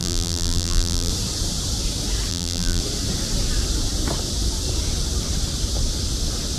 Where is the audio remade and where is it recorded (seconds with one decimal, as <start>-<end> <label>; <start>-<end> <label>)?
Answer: 0.0-1.1 remade; 1.1-2.3 recorded; 2.3-2.8 remade; 2.8-6.6 recorded